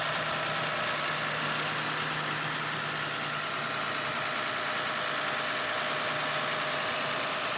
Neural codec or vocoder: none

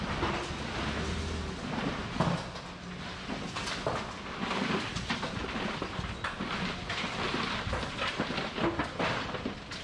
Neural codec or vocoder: none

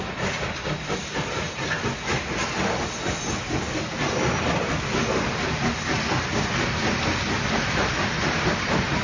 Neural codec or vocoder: none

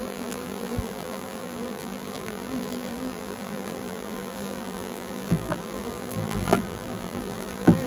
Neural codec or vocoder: vocoder, BigVGAN v2